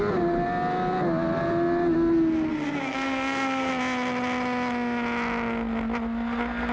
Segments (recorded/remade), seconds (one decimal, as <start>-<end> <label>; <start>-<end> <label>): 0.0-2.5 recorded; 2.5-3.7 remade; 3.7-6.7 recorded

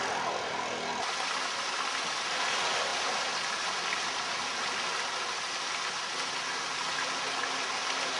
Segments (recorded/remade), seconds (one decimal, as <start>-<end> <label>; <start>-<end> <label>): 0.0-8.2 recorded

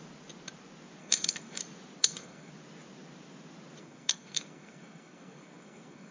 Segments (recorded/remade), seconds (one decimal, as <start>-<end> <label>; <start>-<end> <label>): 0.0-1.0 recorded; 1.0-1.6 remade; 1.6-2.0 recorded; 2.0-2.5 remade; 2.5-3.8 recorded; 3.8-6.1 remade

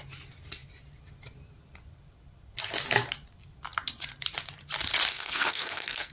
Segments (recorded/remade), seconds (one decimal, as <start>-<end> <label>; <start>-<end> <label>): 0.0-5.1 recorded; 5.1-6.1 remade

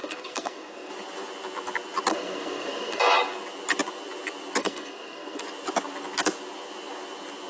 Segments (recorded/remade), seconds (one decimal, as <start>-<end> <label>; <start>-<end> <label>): 0.0-0.9 remade; 0.9-2.1 recorded; 2.1-3.0 remade; 3.0-4.6 recorded; 4.6-5.4 remade; 5.4-7.5 recorded

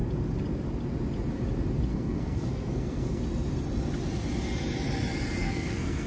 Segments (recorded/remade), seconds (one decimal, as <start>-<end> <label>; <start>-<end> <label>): 0.0-1.9 recorded; 1.9-3.2 remade; 3.2-5.4 recorded; 5.4-6.1 remade

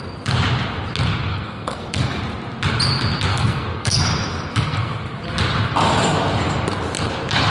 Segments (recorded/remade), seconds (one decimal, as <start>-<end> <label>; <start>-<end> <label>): 0.0-1.3 recorded; 1.3-2.2 remade; 2.2-3.3 recorded; 3.3-4.0 remade; 4.0-4.5 recorded; 4.5-5.2 remade; 5.2-7.5 recorded